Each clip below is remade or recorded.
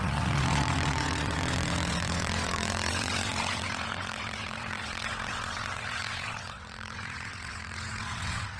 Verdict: remade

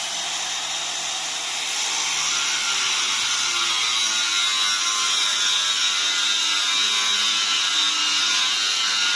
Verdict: recorded